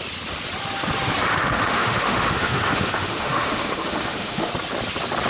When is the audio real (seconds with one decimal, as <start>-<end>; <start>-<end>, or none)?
0.0-1.3; 4.5-5.3